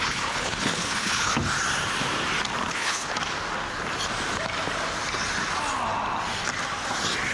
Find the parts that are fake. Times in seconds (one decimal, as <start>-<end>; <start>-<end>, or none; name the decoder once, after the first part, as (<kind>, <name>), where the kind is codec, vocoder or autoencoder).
0.0-1.3 (codec, HILCodec); 2.7-3.1